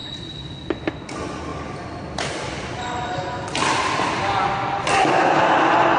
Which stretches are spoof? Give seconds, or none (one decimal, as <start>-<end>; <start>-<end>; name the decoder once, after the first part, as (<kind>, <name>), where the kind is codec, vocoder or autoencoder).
none